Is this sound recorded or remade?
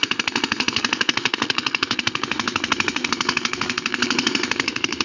remade